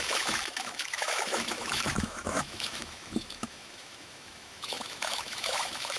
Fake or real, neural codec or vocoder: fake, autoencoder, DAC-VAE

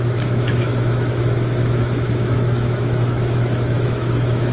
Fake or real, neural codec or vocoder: fake, autoencoder, DAC-VAE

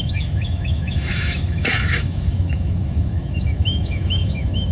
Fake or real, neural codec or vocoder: fake, autoencoder, DAC-VAE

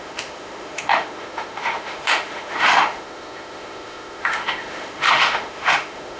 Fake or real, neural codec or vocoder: fake, autoencoder, DAC-VAE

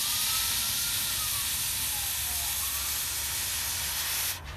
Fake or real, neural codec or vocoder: real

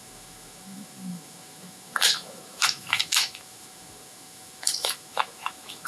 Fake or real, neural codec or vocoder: fake, autoencoder, DAC-VAE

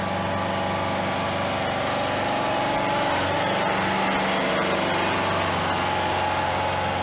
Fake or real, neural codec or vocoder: real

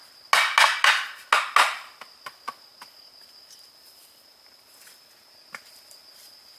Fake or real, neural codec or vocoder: real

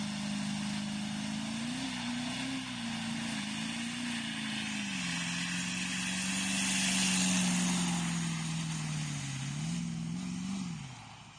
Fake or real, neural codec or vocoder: real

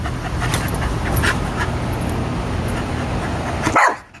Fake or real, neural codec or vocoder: real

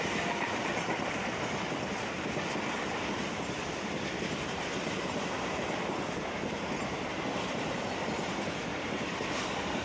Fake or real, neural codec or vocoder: real